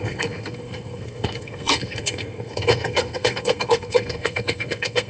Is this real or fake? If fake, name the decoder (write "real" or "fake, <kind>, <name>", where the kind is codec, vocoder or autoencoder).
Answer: fake, codec, SNAC